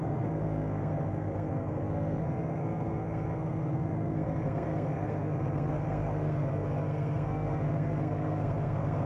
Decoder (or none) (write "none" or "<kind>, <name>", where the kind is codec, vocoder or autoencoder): codec, SNAC